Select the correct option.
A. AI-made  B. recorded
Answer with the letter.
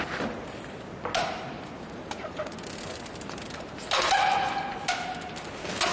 B